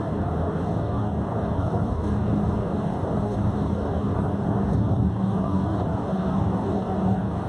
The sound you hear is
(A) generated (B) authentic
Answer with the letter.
A